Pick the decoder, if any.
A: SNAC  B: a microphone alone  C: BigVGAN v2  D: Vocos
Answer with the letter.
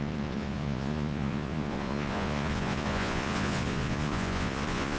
D